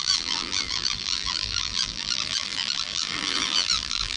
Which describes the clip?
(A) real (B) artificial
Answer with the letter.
B